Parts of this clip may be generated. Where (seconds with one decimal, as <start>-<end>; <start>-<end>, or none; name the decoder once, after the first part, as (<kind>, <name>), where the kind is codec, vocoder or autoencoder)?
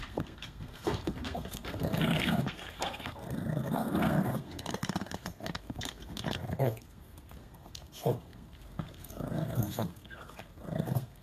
0.0-11.2 (codec, SNAC)